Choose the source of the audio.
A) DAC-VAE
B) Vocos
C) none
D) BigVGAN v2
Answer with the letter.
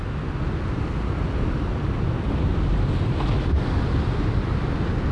C